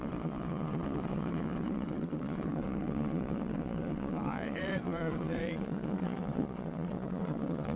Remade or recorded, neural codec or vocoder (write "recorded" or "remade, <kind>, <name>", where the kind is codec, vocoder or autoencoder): remade, vocoder, Vocos